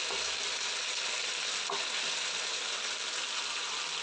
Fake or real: real